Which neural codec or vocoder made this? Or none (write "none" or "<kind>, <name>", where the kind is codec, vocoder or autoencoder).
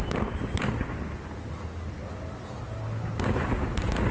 none